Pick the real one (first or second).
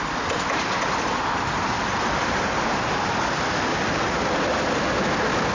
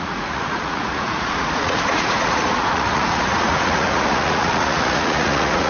first